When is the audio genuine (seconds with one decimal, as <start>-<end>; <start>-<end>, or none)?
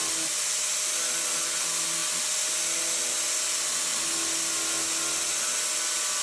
0.0-6.2